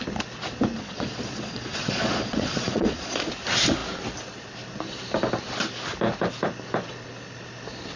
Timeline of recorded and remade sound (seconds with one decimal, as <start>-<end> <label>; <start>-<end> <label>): 0.0-0.7 recorded; 0.7-3.3 remade; 3.3-8.0 recorded